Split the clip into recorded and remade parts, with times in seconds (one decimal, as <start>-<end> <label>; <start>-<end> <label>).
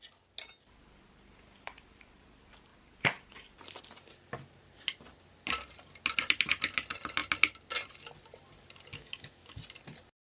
0.0-8.9 recorded; 8.9-9.6 remade; 9.6-10.2 recorded